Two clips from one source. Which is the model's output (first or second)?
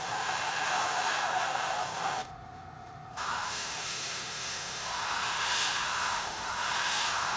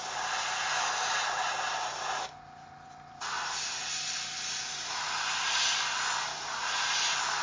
first